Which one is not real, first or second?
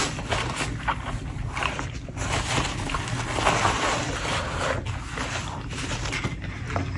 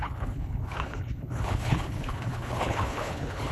second